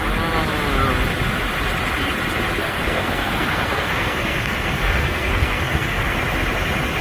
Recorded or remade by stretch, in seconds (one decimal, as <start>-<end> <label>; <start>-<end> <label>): 0.0-2.6 recorded; 2.6-6.2 remade; 6.2-7.0 recorded